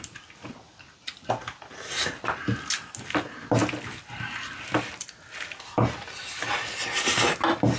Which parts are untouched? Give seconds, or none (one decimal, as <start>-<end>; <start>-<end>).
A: 0.0-7.8

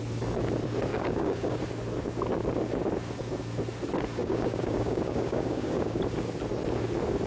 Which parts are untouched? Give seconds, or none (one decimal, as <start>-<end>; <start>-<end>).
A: 0.0-0.9; 1.6-4.2; 6.0-7.3

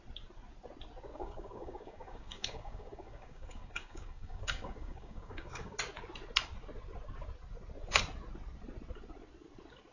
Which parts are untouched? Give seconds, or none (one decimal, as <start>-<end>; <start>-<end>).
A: 0.0-1.1; 5.8-9.9